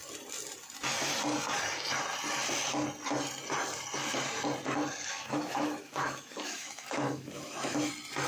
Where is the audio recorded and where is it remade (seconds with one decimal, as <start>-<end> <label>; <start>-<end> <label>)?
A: 0.0-5.1 recorded; 5.1-7.9 remade; 7.9-8.3 recorded